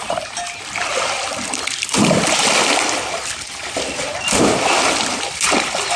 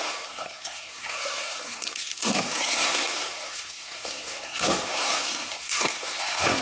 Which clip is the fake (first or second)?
second